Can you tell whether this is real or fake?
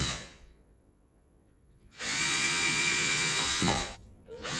fake